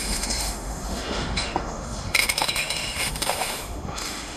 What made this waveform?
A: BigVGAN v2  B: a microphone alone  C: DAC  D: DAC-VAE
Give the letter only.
D